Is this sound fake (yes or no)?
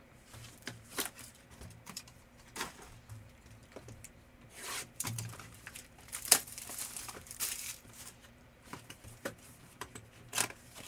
yes